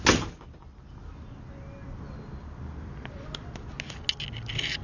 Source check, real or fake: real